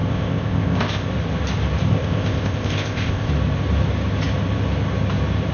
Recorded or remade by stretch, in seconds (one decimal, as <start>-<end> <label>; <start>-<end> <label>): 0.0-1.1 remade; 1.1-1.9 recorded; 1.9-3.3 remade; 3.3-5.5 recorded